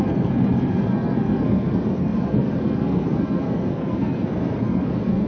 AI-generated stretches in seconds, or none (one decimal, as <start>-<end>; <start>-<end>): 0.0-5.3